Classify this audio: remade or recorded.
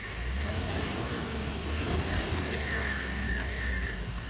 remade